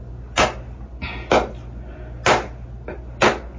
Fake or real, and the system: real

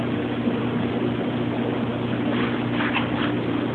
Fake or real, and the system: real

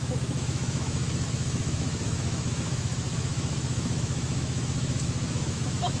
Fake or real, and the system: fake, autoencoder, DAC-VAE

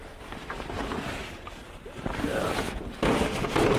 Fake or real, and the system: real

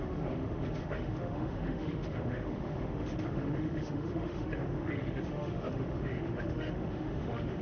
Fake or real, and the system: fake, autoencoder, DAC-VAE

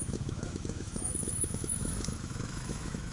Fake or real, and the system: fake, autoencoder, DAC-VAE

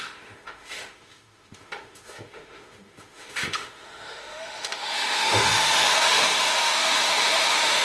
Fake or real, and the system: fake, autoencoder, DAC-VAE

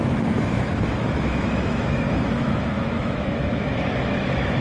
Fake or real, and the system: fake, autoencoder, DAC-VAE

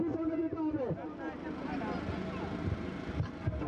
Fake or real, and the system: real